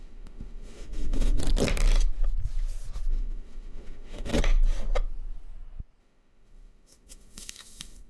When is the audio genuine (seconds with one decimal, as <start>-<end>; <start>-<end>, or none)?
1.4-3.1; 4.3-6.0